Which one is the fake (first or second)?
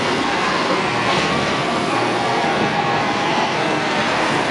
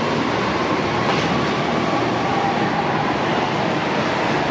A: first